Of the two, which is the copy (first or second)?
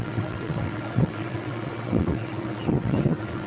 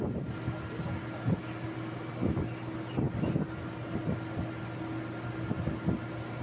first